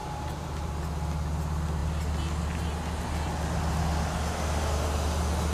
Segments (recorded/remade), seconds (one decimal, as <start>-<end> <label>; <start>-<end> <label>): 0.0-0.7 remade; 0.7-5.5 recorded